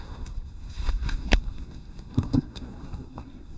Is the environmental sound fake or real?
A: fake